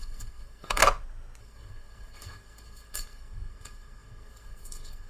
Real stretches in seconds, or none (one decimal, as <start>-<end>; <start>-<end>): 0.8-1.4